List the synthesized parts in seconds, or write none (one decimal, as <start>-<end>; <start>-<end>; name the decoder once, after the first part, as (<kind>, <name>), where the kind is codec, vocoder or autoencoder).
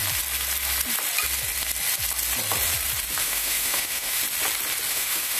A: 3.2-4.2 (autoencoder, DAC-VAE); 4.9-5.4